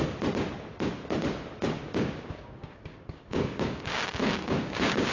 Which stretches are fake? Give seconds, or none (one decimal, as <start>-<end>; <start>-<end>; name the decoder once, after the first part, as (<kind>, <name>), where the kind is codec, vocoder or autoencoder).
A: 1.8-5.1 (codec, DAC)